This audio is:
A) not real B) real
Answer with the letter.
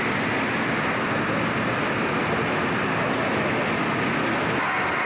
B